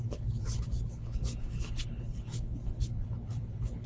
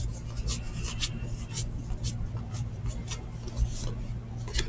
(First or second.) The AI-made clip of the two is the first